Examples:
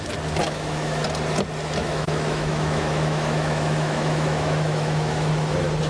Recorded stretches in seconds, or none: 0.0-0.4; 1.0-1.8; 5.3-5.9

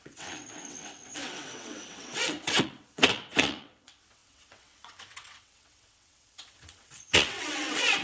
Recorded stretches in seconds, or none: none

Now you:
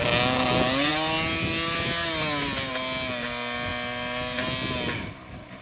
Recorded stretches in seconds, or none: 0.0-5.6

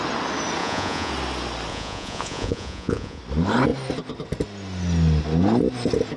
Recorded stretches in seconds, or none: 0.0-0.6; 1.1-1.7; 3.2-6.2